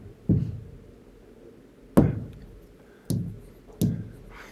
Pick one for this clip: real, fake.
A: real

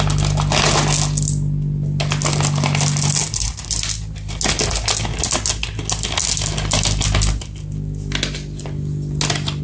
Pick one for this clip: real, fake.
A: real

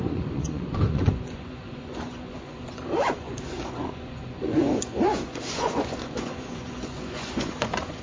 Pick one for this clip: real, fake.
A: fake